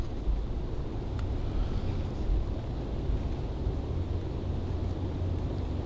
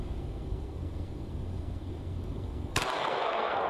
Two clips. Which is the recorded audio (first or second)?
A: first